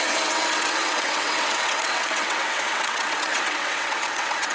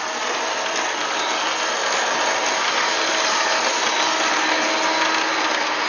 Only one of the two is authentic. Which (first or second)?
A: second